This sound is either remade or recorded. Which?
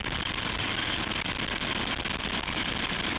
recorded